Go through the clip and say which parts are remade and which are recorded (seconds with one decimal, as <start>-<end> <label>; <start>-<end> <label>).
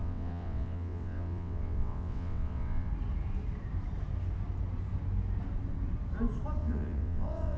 0.0-2.9 remade; 2.9-6.6 recorded; 6.6-7.6 remade